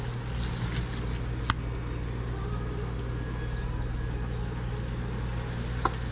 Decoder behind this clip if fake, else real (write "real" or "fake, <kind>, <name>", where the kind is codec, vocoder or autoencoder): real